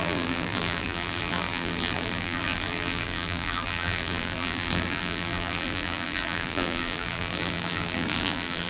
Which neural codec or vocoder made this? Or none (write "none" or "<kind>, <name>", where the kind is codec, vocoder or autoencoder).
vocoder, BigVGAN v2